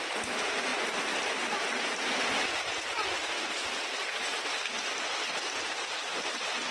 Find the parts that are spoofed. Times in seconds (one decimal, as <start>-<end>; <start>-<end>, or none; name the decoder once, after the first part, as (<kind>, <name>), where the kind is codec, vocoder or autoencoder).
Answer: none